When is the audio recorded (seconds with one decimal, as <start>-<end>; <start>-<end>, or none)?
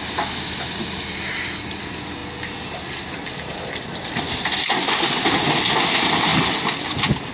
0.0-7.3